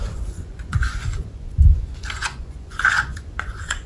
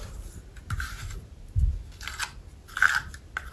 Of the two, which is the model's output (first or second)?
first